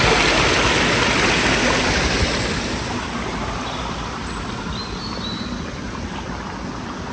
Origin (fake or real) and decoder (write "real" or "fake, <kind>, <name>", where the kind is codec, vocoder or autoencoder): real